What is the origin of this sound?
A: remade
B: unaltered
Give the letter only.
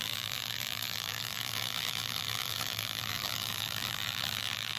A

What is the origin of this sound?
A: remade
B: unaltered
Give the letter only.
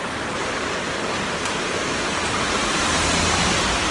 A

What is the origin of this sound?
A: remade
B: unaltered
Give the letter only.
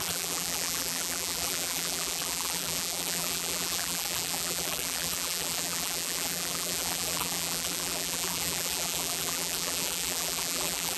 A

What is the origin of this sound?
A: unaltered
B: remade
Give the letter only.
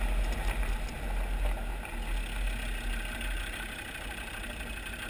A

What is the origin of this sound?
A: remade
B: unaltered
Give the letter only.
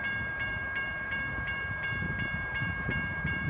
A